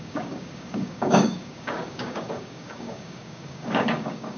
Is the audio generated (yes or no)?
yes